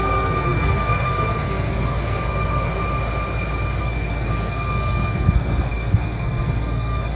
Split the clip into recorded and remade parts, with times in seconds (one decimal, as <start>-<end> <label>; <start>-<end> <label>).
0.0-2.7 remade; 2.7-3.8 recorded; 3.8-7.2 remade